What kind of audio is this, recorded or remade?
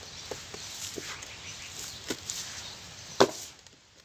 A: recorded